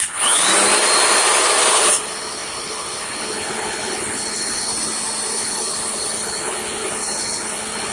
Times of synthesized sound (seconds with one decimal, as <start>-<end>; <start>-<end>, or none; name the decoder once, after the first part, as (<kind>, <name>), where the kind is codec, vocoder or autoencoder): 0.0-0.5 (codec, HILCodec); 1.7-4.7; 5.3-7.9